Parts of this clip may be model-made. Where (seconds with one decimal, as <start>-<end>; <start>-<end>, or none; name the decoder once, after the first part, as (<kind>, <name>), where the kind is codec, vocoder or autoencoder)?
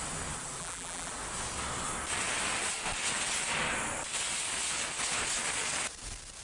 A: 0.6-1.1 (vocoder, BigVGAN v2)